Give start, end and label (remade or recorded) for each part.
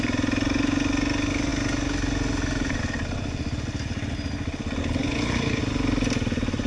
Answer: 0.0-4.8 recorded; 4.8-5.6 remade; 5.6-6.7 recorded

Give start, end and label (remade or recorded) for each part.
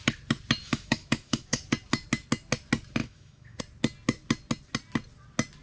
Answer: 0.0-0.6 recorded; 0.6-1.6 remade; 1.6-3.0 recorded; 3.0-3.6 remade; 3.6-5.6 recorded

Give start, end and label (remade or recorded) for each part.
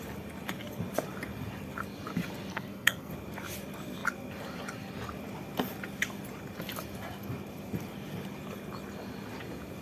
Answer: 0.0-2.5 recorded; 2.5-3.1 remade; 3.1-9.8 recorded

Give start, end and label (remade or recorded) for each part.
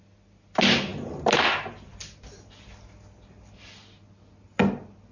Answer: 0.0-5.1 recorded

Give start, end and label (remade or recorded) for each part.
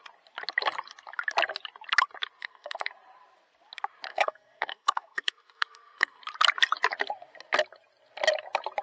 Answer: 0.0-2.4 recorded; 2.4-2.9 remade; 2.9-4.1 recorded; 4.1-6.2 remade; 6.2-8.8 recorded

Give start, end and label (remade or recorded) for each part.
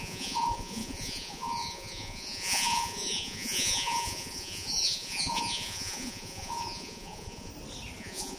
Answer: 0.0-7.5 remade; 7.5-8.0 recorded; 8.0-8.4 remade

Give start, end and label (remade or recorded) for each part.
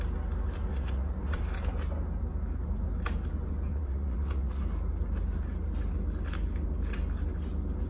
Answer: 0.0-0.7 recorded; 0.7-1.4 remade; 1.4-3.7 recorded; 3.7-4.6 remade; 4.6-7.9 recorded